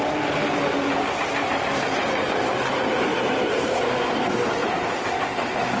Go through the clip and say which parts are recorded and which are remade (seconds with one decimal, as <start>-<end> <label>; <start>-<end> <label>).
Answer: 0.0-3.1 recorded; 3.1-3.8 remade; 3.8-4.6 recorded; 4.6-5.1 remade; 5.1-5.8 recorded